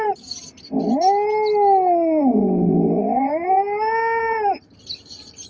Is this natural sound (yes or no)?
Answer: yes